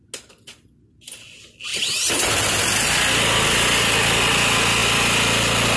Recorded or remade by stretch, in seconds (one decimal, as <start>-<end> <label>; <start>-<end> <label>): 0.0-5.8 recorded